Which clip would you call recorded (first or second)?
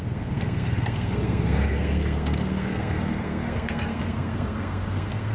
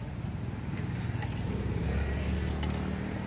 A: second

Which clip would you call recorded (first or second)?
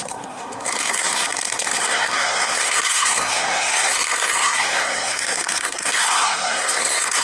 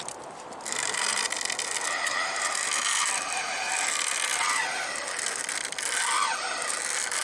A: second